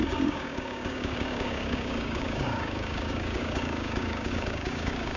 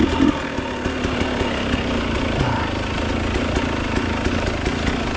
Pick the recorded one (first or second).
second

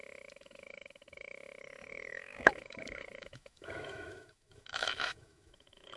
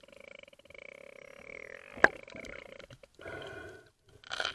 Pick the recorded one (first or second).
second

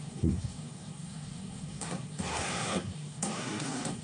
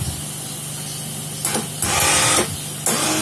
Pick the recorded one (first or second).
second